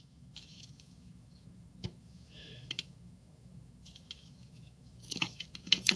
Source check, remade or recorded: remade